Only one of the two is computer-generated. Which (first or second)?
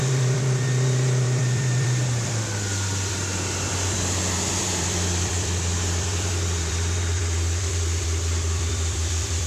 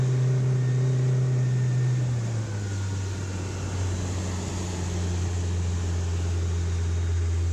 first